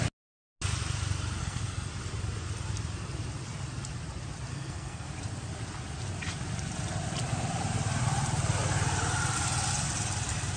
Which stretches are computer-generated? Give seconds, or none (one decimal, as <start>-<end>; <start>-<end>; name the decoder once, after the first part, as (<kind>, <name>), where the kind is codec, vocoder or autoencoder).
1.4-1.9 (codec, SNAC); 4.5-5.1